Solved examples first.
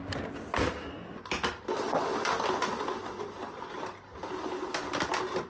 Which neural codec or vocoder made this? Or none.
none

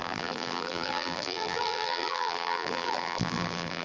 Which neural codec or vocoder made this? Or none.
vocoder, BigVGAN v2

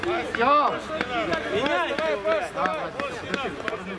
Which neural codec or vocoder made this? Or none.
none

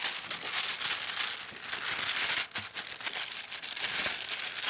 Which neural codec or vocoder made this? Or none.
none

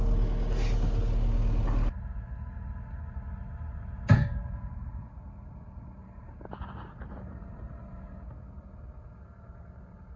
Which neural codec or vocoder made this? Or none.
none